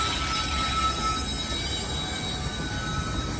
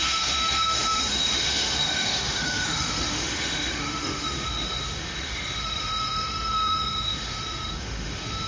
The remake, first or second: second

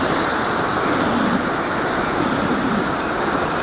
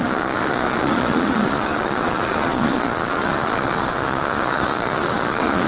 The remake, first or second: second